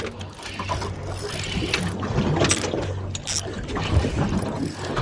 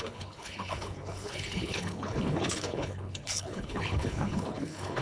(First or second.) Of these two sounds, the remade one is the second